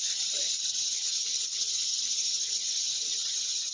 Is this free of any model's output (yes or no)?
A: no